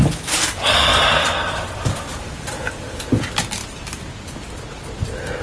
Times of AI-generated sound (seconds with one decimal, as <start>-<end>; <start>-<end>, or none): none